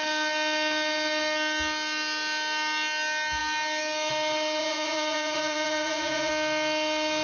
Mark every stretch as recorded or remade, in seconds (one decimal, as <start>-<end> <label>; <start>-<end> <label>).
0.0-4.6 recorded; 4.6-6.3 remade; 6.3-7.2 recorded